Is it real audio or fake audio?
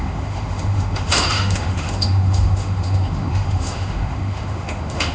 fake